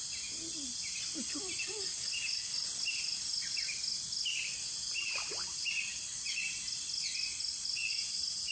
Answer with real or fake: real